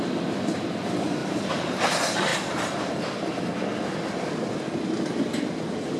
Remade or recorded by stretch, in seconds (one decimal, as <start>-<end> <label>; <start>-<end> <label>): 0.0-1.2 recorded; 1.2-1.9 remade; 1.9-2.3 recorded; 2.3-3.4 remade; 3.4-6.0 recorded